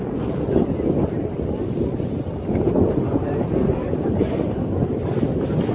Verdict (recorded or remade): recorded